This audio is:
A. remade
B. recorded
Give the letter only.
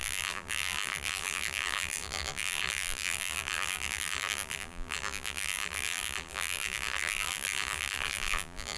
A